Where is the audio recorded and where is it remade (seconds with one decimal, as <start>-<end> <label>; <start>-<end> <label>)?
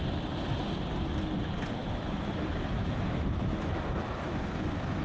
0.0-1.8 recorded; 1.8-5.0 remade